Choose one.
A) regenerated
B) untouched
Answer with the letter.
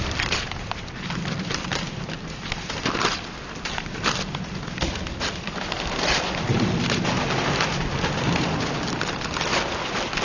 B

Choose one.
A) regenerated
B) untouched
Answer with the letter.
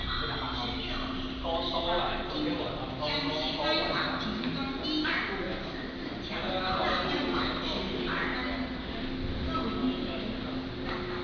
B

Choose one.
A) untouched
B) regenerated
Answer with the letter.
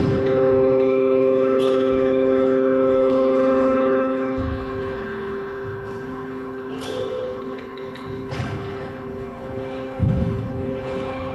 B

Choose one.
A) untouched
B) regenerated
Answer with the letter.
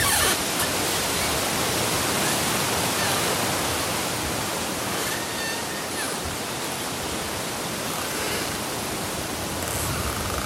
A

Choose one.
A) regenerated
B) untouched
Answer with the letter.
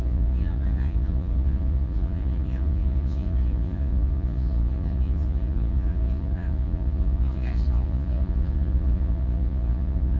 A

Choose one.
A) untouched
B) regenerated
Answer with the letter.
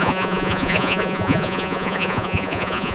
B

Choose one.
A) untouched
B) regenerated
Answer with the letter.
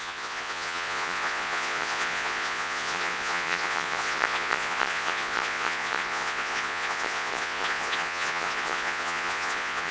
B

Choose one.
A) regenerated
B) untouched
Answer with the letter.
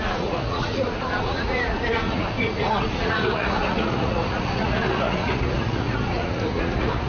A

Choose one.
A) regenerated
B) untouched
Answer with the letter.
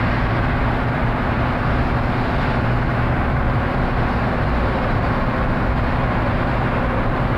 B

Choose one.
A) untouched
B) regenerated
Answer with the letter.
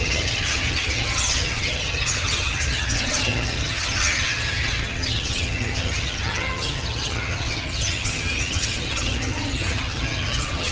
B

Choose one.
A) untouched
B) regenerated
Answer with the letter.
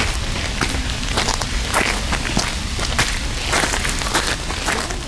A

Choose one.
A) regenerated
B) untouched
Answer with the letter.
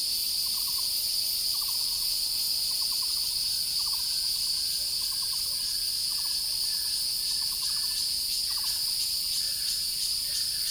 B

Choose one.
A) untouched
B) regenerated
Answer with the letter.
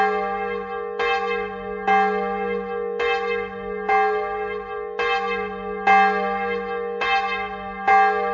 A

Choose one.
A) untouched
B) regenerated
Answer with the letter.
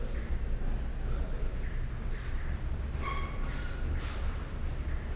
A